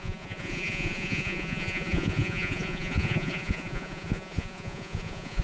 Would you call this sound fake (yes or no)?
yes